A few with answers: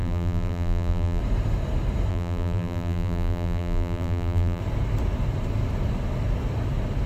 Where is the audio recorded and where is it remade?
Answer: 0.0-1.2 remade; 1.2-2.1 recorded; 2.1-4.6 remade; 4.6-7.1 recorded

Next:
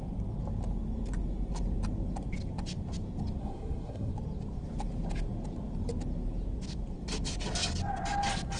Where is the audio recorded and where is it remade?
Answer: 0.0-3.4 recorded; 3.4-4.1 remade; 4.1-8.6 recorded

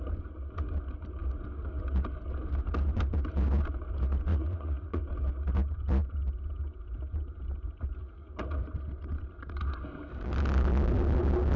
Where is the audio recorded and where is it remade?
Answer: 0.0-4.3 recorded; 4.3-5.0 remade; 5.0-8.0 recorded; 8.0-8.5 remade; 8.5-11.6 recorded

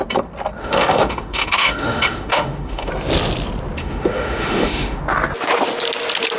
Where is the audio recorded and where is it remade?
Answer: 0.0-0.6 recorded; 0.6-2.9 remade; 2.9-3.8 recorded; 3.8-5.0 remade; 5.0-6.4 recorded

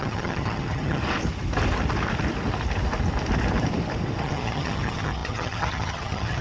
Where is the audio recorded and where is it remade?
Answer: 0.0-1.0 remade; 1.0-4.2 recorded; 4.2-6.4 remade

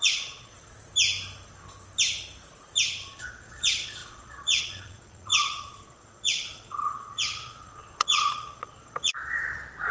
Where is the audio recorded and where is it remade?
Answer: 0.0-0.9 remade; 0.9-3.1 recorded; 3.1-9.9 remade